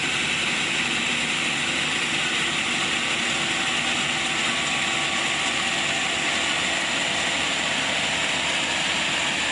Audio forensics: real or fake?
real